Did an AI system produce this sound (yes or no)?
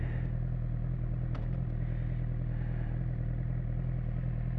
no